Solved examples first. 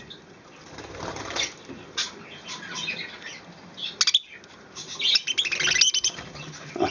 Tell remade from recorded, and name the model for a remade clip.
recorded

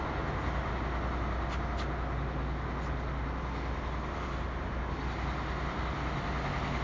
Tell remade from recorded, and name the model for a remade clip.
recorded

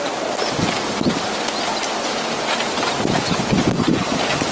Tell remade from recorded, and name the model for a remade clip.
recorded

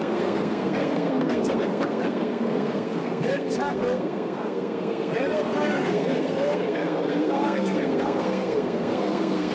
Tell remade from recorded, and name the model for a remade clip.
remade, codec, SNAC